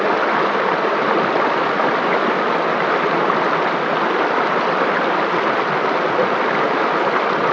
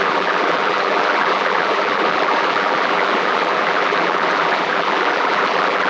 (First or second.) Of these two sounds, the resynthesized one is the second